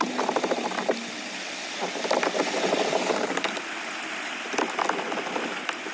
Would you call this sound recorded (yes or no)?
yes